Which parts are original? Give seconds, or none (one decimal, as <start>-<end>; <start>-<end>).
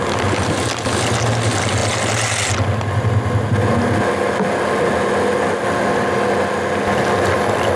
0.0-7.8